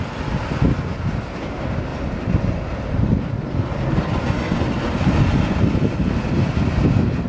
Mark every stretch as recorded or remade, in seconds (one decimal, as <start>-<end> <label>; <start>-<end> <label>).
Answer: 0.0-7.3 recorded